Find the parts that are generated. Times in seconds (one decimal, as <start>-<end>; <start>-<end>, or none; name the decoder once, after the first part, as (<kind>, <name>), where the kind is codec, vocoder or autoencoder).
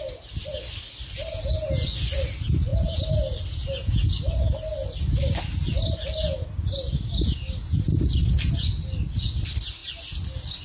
none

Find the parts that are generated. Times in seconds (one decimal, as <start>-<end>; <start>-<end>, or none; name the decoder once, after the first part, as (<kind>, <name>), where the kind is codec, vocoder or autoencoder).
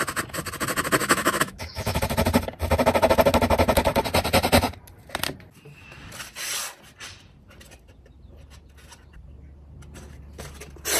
1.0-2.0 (autoencoder, DAC-VAE)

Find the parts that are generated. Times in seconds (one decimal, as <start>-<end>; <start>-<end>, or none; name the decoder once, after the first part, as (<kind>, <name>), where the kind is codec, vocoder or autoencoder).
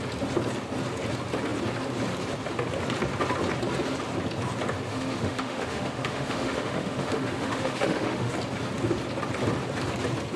4.9-8.3 (autoencoder, DAC-VAE)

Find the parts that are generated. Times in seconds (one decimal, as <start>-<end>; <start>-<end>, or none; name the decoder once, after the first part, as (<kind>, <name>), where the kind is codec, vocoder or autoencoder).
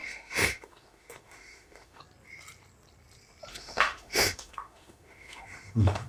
0.0-2.0 (autoencoder, DAC-VAE); 3.5-6.1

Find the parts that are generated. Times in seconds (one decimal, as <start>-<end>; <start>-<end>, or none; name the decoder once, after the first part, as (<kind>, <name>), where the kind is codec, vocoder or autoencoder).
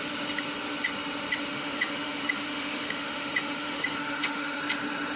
1.5-4.6 (autoencoder, DAC-VAE)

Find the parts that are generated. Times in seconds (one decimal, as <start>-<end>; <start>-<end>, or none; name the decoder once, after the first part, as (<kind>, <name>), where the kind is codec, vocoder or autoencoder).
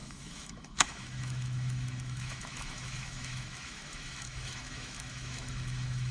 0.0-6.1 (autoencoder, DAC-VAE)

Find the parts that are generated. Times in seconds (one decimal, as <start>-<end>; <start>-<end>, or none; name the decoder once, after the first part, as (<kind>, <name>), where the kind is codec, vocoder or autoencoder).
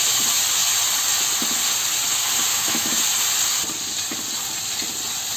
2.5-3.0 (autoencoder, DAC-VAE)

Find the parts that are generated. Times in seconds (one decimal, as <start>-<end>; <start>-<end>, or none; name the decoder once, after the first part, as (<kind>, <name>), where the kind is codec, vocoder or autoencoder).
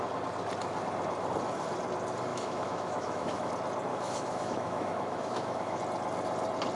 2.3-3.5 (autoencoder, DAC-VAE); 3.9-5.8